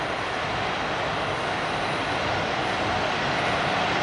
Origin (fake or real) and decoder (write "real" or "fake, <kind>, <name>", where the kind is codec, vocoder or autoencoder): fake, vocoder, BigVGAN v2